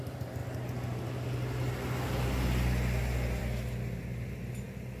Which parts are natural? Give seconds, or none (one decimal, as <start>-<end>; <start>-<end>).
0.0-5.0